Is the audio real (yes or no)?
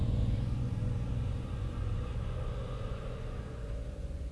no